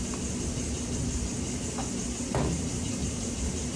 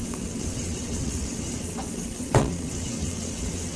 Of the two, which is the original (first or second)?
first